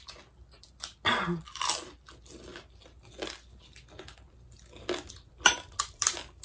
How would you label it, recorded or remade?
recorded